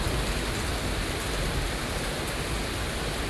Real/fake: real